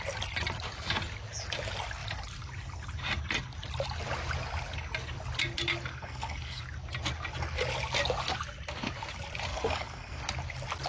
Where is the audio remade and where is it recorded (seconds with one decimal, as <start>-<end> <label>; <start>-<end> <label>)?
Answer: 0.0-5.9 recorded; 5.9-6.6 remade; 6.6-9.5 recorded; 9.5-10.2 remade; 10.2-10.9 recorded